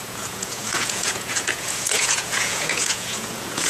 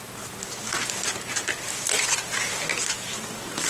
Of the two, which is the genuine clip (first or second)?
second